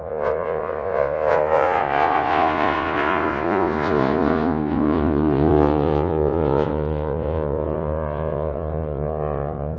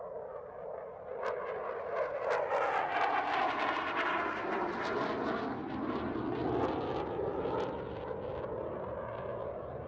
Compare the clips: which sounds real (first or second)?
second